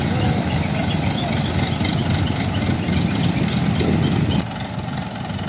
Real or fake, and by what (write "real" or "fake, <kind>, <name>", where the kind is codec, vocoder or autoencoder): real